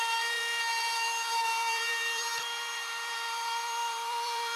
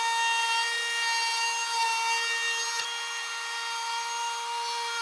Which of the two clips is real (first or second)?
second